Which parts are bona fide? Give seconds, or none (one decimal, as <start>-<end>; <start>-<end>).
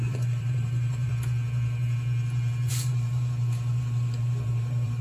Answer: 1.1-2.7